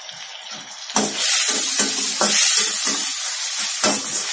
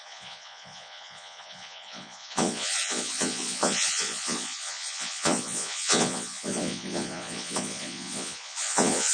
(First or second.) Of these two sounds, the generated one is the second